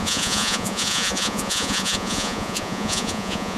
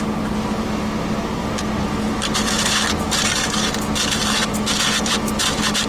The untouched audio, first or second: second